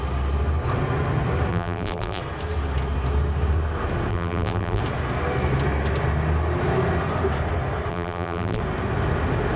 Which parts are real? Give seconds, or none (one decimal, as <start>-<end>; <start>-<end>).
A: 0.0-1.5; 2.2-4.1; 4.8-7.9; 8.6-9.6